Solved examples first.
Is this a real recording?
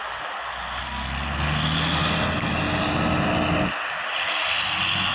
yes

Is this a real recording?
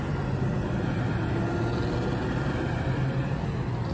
yes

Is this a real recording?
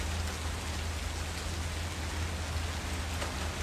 yes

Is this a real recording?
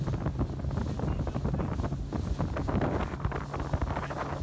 yes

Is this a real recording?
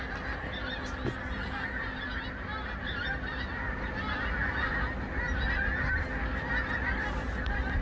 yes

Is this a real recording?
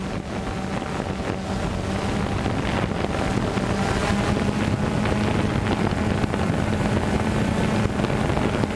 yes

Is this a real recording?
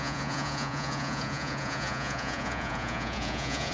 no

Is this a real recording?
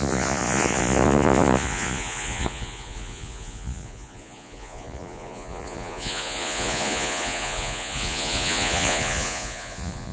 no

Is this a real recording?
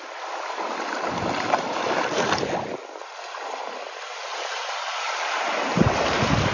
yes